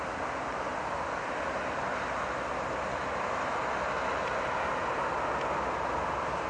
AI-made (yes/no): no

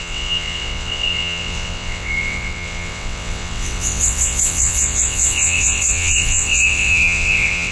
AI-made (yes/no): yes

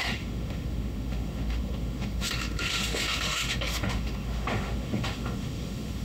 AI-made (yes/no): yes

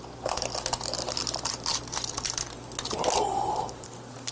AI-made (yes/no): yes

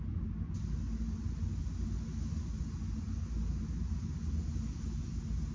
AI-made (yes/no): no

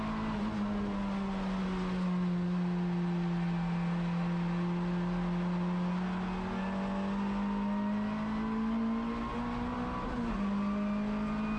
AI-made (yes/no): no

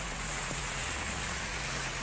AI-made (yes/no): yes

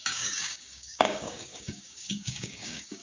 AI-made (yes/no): yes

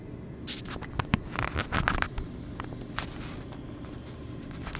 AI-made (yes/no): no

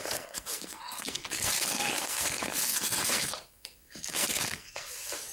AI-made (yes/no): yes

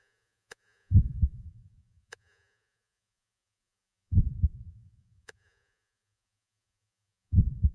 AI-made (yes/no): yes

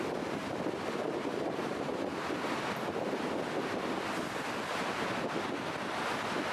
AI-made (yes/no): no